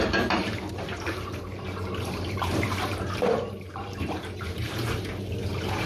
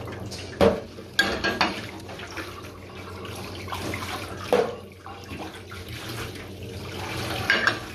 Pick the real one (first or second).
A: second